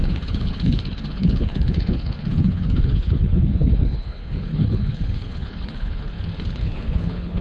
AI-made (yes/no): yes